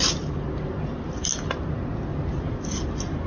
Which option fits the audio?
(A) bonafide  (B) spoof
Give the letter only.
A